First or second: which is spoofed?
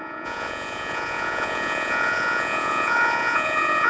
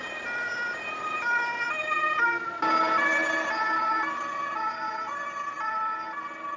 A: first